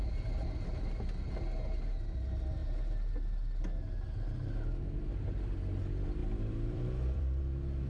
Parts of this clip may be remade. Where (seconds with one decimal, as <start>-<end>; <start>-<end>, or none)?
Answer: 0.0-0.8; 6.2-7.4

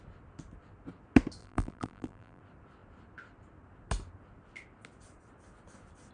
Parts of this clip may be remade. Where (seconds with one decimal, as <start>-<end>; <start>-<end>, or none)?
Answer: 1.4-2.4

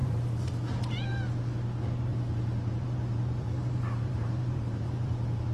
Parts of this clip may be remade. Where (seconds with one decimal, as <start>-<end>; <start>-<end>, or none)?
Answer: 0.0-0.5; 2.1-5.5

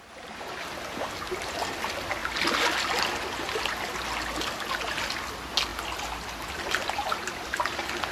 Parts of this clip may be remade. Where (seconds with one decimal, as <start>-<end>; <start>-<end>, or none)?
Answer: none

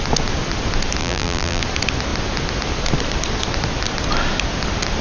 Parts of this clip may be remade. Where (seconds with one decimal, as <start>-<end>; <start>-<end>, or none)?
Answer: 1.0-1.6

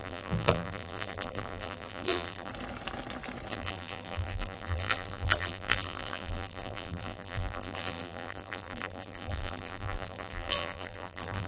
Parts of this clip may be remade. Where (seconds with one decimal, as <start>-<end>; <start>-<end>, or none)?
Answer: 0.0-2.5; 3.5-11.5

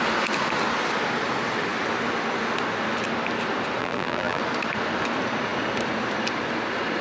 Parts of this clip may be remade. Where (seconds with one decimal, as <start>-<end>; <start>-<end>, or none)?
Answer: 3.8-4.4

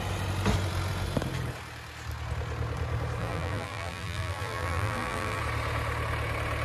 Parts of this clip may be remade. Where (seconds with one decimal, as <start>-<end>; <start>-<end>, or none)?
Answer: 3.2-5.4